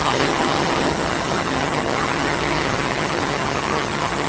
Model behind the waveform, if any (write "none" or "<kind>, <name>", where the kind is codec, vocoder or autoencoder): vocoder, HiFi-GAN